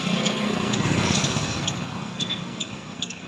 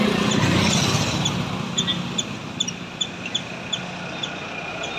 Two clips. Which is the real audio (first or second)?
second